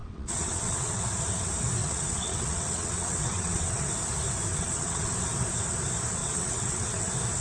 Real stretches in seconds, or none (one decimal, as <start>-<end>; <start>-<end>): 1.0-1.8; 3.9-4.5; 5.1-6.2; 7.0-7.4